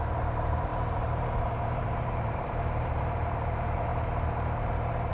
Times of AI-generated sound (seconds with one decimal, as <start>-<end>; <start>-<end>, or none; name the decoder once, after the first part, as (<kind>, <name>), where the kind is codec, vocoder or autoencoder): 0.0-3.9 (vocoder, BigVGAN v2)